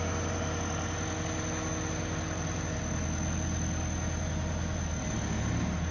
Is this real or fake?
real